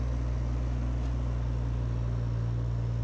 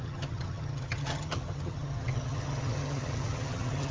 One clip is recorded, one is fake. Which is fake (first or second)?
second